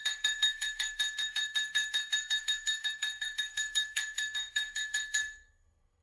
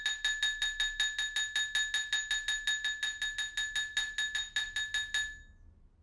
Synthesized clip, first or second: first